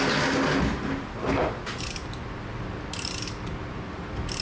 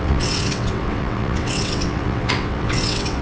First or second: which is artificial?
second